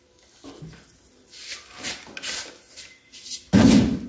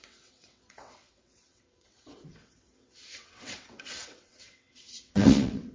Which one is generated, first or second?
second